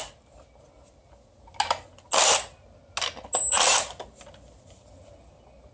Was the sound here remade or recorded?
recorded